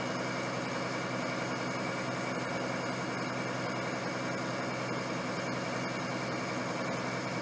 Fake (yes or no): no